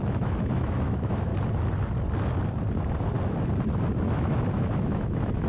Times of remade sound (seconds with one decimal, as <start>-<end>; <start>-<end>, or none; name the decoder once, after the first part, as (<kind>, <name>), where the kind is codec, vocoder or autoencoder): 0.0-1.3 (autoencoder, DAC-VAE); 4.0-5.5